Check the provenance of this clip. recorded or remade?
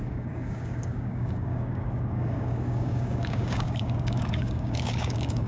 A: remade